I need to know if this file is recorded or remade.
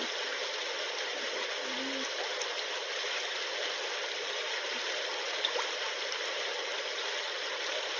recorded